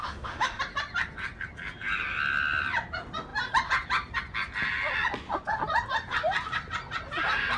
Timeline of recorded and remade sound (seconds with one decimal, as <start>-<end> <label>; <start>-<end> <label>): 0.0-0.6 remade; 0.6-7.6 recorded